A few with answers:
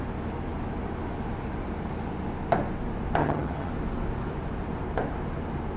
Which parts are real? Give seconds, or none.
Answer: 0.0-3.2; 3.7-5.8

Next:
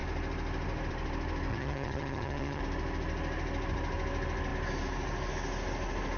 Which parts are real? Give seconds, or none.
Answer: 0.0-1.5; 2.6-6.2